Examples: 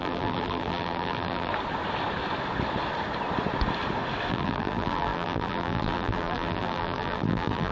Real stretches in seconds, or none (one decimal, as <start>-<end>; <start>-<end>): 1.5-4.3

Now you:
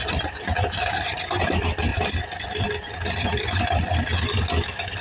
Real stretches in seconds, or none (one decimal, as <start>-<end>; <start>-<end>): 0.0-1.9

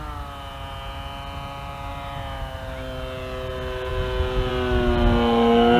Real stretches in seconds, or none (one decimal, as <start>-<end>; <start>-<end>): 0.0-5.8